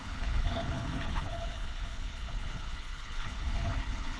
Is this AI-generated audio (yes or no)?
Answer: yes